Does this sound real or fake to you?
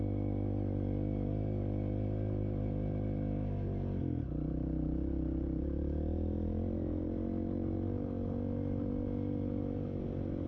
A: real